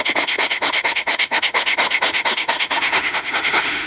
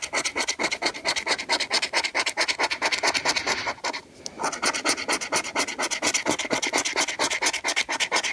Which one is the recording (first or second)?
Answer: second